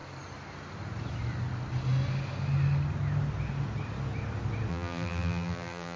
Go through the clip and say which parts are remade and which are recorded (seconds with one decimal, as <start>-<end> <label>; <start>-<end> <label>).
0.0-4.7 recorded; 4.7-6.0 remade